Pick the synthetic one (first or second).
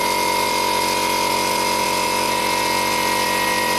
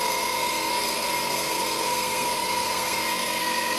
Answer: second